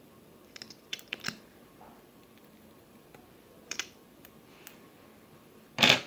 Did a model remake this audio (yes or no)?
yes